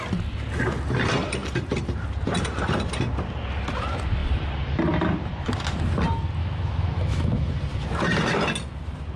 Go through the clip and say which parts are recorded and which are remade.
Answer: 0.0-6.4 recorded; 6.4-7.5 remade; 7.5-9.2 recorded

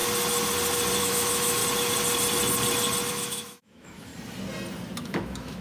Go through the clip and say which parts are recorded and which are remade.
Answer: 0.0-1.0 recorded; 1.0-1.6 remade; 1.6-3.1 recorded; 3.1-4.1 remade; 4.1-5.0 recorded; 5.0-5.6 remade

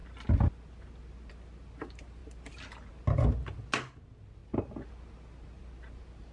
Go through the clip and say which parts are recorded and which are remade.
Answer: 0.0-6.3 recorded

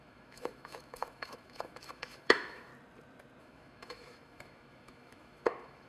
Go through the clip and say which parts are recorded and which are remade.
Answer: 0.0-2.7 remade; 2.7-3.4 recorded; 3.4-5.9 remade